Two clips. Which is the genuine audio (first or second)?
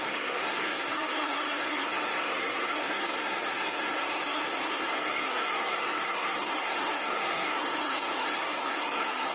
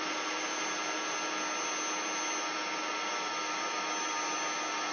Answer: second